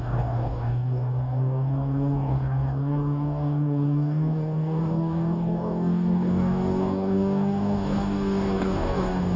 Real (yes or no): no